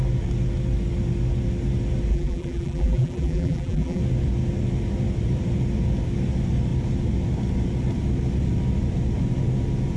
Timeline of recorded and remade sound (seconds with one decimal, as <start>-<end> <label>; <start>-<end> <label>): 0.0-2.1 recorded; 2.1-4.0 remade; 4.0-10.0 recorded